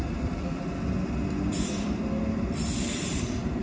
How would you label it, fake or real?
real